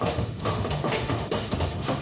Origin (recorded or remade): remade